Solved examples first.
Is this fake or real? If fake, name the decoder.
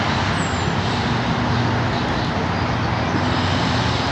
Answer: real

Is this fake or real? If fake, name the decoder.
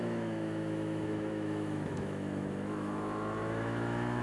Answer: fake, autoencoder, DAC-VAE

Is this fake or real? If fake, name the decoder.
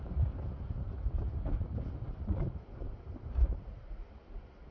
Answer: real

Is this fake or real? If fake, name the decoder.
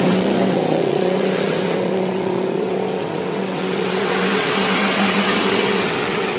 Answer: fake, vocoder, WaveNeXt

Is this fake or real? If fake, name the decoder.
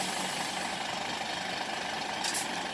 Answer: real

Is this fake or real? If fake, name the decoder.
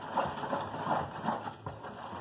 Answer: real